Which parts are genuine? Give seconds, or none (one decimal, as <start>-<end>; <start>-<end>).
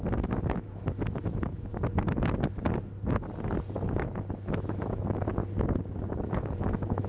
1.7-4.3; 5.4-6.2